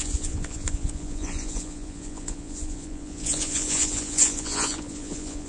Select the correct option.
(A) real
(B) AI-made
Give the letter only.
B